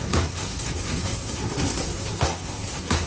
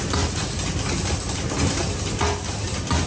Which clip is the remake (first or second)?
first